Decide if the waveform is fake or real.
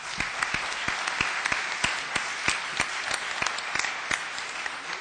real